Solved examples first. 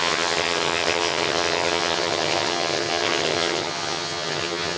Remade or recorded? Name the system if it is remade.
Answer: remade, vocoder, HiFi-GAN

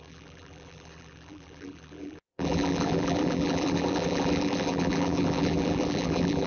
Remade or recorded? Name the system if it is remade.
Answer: remade, vocoder, BigVGAN v2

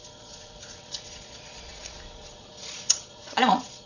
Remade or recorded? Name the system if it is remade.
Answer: remade, vocoder, Vocos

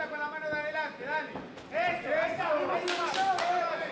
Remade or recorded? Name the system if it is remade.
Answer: recorded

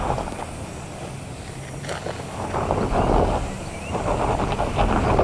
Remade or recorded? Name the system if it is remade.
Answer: recorded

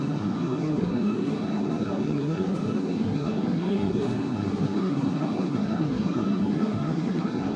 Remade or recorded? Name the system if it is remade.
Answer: remade, codec, SNAC